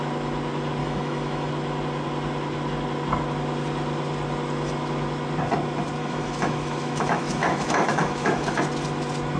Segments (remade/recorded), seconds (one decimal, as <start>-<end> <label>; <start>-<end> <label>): 0.0-0.8 recorded; 0.8-1.5 remade; 1.5-6.0 recorded; 6.0-8.6 remade; 8.6-9.4 recorded